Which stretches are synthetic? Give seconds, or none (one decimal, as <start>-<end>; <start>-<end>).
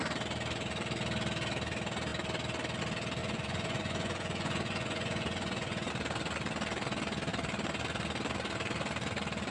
3.2-5.9